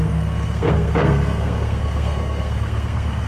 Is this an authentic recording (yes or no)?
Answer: no